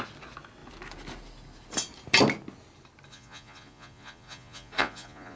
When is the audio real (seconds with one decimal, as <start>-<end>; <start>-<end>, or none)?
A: 0.0-3.1